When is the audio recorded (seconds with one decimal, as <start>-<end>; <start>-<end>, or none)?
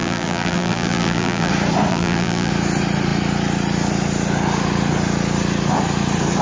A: 1.5-1.9; 2.5-6.4